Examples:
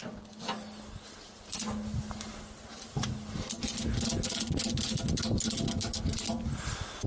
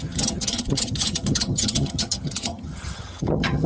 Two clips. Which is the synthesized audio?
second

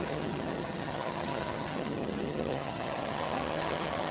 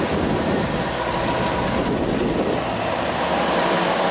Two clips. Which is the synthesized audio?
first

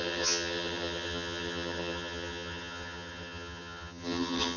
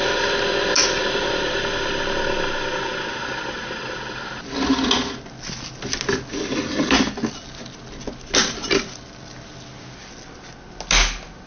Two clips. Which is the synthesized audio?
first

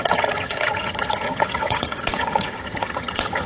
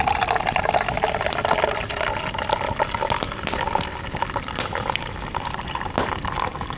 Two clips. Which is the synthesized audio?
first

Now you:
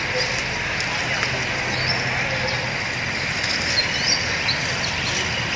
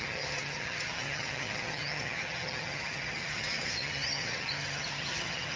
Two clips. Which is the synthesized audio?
second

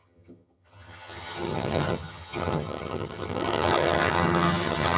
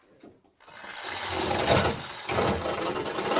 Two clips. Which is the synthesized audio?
first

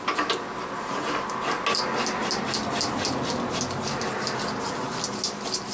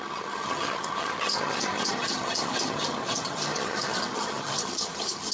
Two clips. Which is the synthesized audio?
second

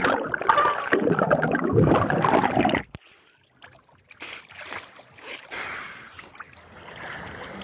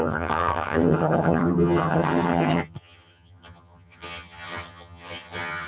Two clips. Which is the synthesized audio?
second